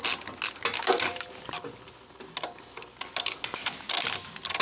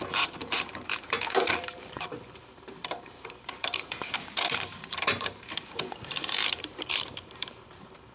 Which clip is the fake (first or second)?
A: second